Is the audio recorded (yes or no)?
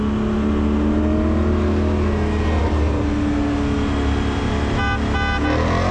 yes